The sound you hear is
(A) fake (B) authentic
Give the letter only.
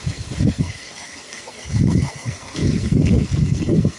A